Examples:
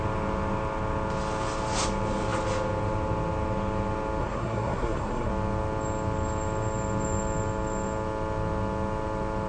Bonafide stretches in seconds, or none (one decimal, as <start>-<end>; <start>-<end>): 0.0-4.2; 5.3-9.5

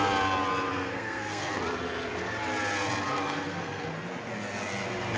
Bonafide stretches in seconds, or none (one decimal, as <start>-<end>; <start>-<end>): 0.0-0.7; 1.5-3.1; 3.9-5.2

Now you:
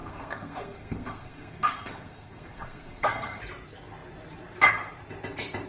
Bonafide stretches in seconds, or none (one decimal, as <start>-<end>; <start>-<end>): 3.4-5.7

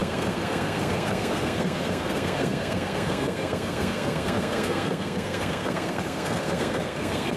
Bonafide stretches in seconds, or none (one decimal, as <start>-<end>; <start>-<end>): none